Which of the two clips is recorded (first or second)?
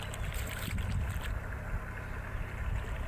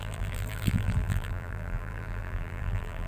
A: first